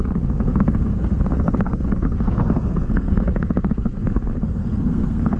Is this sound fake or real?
fake